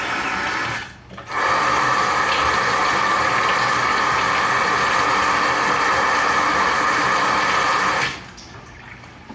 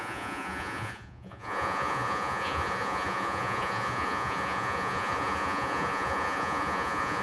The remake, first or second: second